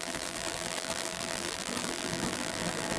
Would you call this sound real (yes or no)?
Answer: no